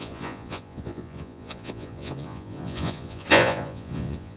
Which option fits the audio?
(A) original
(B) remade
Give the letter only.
B